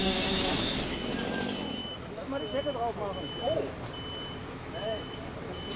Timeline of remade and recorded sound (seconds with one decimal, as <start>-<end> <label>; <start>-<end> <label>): 0.0-1.1 remade; 1.1-1.8 recorded; 1.8-2.6 remade; 2.6-4.4 recorded; 4.4-5.1 remade; 5.1-5.8 recorded